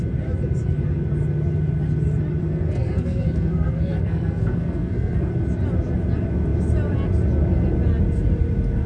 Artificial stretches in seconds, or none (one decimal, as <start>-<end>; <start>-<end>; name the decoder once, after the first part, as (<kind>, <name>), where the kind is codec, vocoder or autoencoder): 2.4-5.3 (codec, SNAC)